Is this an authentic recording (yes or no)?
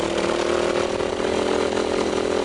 yes